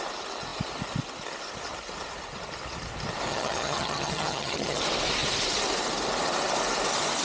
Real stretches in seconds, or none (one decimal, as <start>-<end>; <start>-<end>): 0.0-3.3; 4.8-7.2